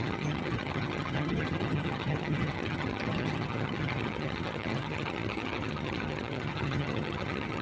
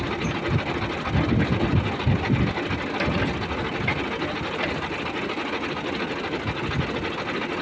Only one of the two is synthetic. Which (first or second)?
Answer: first